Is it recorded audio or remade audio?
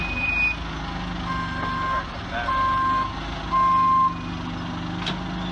recorded